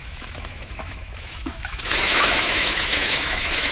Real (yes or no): no